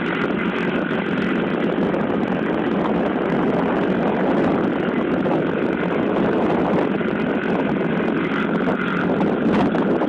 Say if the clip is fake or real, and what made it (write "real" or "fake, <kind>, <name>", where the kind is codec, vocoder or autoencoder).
real